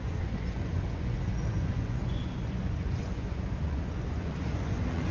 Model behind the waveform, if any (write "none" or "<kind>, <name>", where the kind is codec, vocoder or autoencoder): vocoder, Vocos